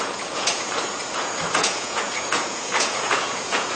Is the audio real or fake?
fake